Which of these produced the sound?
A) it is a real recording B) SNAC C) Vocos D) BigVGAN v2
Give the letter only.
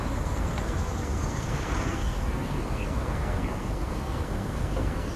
B